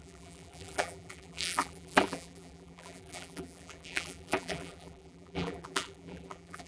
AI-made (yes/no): yes